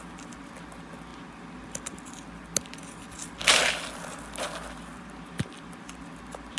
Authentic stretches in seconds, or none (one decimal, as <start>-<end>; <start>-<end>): 0.0-6.6